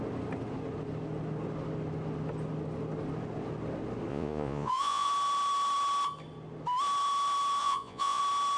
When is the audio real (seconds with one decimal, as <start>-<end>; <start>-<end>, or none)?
0.0-4.1; 5.1-7.6; 8.2-8.6